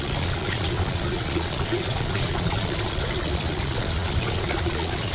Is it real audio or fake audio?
fake